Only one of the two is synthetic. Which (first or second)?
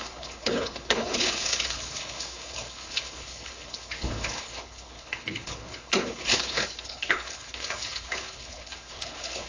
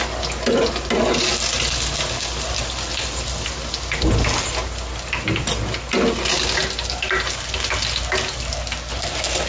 first